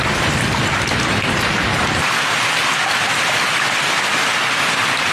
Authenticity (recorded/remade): recorded